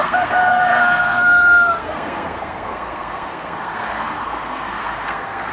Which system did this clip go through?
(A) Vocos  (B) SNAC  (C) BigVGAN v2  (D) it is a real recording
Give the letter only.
B